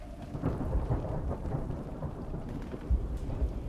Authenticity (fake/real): fake